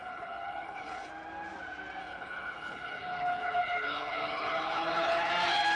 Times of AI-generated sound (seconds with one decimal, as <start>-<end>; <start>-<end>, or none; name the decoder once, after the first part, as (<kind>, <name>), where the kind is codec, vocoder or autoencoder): 0.0-1.1 (codec, HILCodec); 2.0-5.3